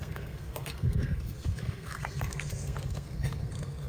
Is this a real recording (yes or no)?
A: no